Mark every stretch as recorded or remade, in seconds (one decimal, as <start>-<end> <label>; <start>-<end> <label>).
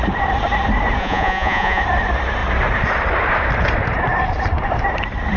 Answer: 0.0-1.0 recorded; 1.0-1.8 remade; 1.8-5.4 recorded